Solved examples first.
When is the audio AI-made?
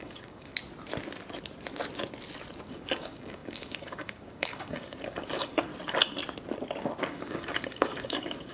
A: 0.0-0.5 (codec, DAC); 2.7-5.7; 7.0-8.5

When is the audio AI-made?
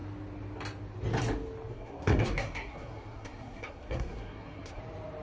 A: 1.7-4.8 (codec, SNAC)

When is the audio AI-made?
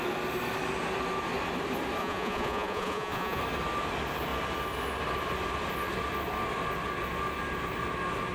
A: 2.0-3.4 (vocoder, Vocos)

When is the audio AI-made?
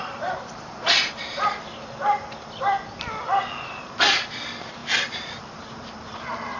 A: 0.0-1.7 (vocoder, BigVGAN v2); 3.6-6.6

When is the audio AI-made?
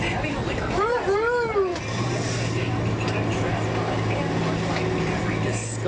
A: none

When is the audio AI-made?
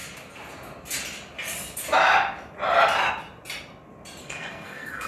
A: 4.2-5.1 (codec, SNAC)